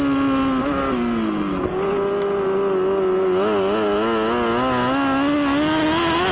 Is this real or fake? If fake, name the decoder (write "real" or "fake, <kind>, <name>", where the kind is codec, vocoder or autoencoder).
real